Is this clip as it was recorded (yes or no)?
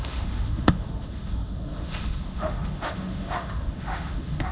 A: no